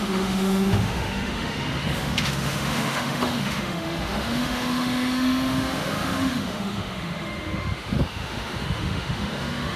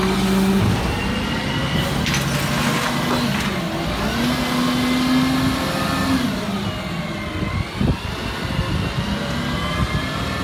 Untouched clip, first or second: second